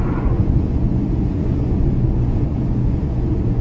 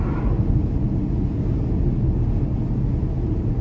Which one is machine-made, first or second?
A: first